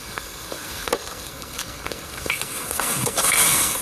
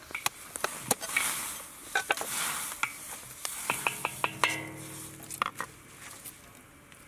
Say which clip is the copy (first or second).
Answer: first